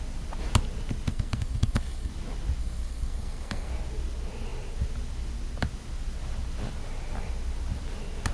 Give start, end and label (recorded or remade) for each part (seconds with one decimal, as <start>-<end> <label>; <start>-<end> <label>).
0.0-1.1 recorded; 1.1-2.1 remade; 2.1-2.6 recorded; 2.6-3.7 remade; 3.7-8.3 recorded